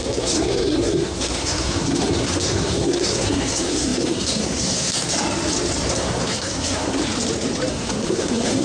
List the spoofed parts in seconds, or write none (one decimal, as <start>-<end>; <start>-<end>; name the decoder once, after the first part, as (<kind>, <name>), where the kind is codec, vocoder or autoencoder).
0.0-5.1 (codec, SNAC); 5.9-7.0; 7.7-8.6